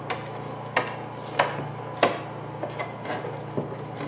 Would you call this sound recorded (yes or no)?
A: yes